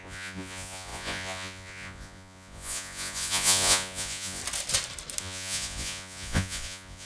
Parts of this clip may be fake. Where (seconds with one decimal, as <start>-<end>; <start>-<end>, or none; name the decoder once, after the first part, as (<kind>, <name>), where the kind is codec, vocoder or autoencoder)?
0.0-4.4 (vocoder, Vocos); 5.2-7.1